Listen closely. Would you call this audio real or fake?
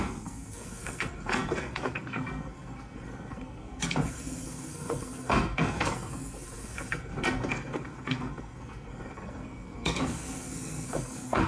fake